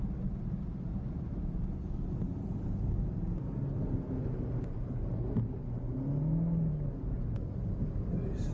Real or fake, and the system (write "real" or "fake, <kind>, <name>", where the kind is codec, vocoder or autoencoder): real